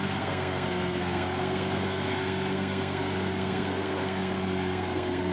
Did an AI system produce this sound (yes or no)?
yes